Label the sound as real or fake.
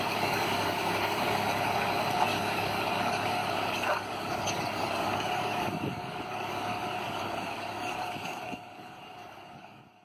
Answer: fake